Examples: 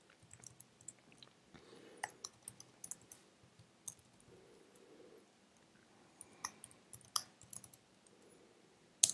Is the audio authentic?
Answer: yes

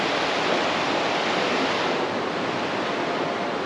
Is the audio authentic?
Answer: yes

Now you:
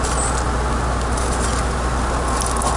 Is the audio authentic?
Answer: yes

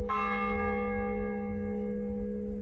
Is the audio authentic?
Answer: yes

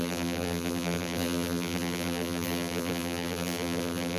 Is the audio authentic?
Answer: no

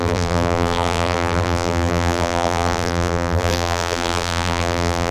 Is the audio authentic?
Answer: no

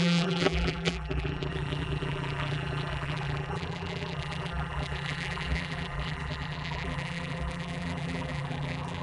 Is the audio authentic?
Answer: no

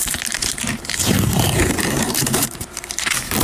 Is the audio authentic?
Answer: no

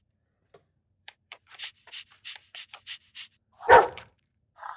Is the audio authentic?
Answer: no